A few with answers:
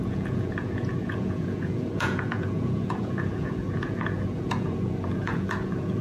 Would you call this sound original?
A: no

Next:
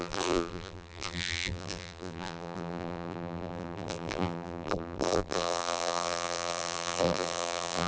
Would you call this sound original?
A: no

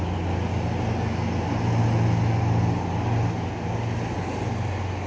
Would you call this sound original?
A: yes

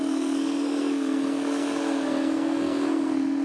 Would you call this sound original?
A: no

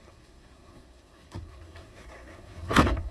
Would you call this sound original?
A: no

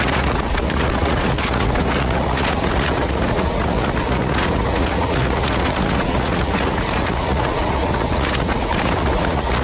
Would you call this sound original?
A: no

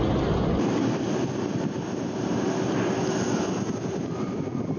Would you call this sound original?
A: yes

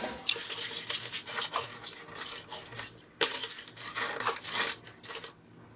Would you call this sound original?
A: yes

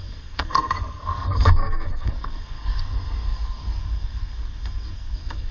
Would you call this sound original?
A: no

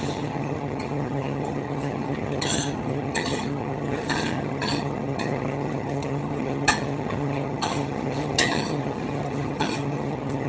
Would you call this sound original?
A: no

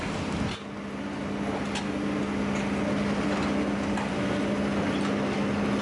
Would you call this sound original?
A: yes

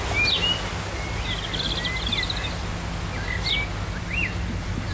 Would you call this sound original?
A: yes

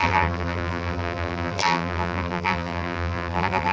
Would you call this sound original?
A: no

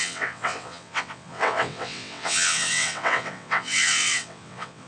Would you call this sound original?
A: no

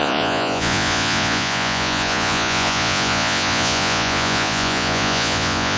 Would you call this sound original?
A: no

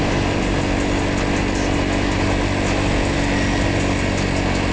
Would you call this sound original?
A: yes